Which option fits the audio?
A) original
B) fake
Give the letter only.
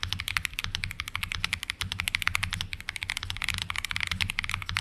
A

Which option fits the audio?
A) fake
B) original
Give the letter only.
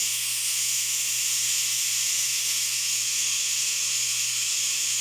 A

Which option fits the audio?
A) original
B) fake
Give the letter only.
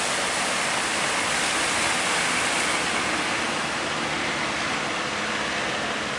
A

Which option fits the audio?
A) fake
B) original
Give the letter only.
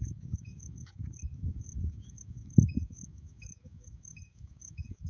A